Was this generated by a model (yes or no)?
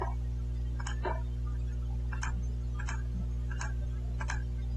no